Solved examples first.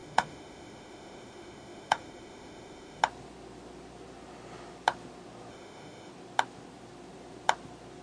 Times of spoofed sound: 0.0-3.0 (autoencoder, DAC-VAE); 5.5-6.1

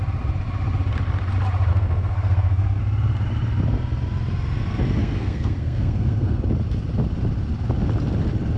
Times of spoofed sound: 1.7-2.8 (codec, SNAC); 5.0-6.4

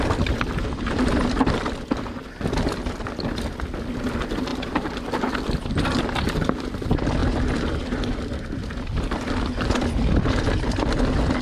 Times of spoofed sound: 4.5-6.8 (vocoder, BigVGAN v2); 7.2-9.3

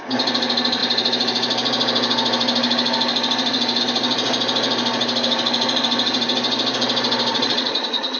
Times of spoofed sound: 7.3-8.2 (vocoder, Vocos)

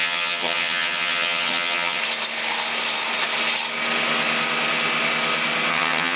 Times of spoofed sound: 0.0-2.0 (vocoder, HiFi-GAN); 5.7-6.2

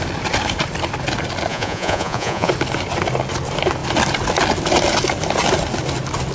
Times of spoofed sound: 1.5-2.5 (vocoder, Vocos)

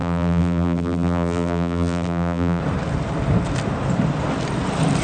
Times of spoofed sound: 0.0-2.6 (vocoder, BigVGAN v2)